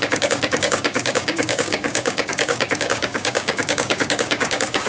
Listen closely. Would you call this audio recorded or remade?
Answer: remade